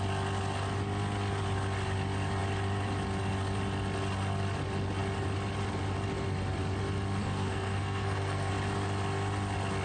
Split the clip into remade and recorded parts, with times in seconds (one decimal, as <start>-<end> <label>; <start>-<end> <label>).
0.0-7.2 recorded; 7.2-8.5 remade; 8.5-9.8 recorded